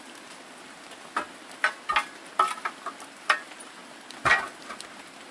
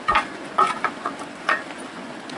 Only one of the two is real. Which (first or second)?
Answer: first